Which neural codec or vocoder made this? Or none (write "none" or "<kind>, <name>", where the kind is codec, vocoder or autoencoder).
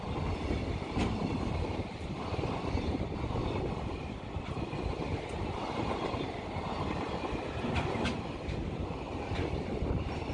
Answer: none